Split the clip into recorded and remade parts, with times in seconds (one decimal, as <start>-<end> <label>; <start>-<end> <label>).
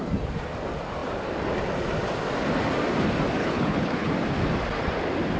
0.0-3.4 recorded; 3.4-4.1 remade; 4.1-5.4 recorded